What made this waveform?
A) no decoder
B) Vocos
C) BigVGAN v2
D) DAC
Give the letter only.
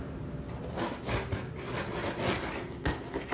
A